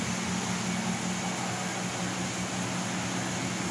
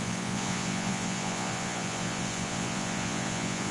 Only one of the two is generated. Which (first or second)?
second